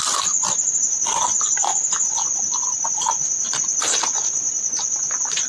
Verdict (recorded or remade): recorded